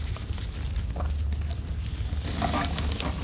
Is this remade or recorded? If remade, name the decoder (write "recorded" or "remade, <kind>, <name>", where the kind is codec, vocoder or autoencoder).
recorded